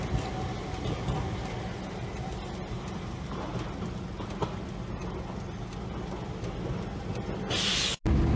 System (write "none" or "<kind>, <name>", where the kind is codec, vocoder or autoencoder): none